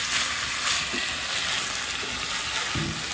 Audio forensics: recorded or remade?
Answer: recorded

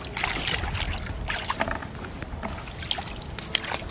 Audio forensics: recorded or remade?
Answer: recorded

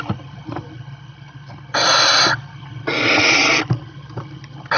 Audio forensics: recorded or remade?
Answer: recorded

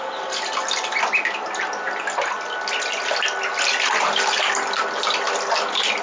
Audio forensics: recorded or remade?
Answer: recorded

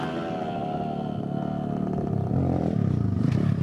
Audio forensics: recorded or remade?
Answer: recorded